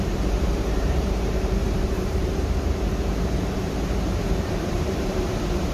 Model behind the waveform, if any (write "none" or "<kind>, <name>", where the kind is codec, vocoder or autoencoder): vocoder, BigVGAN v2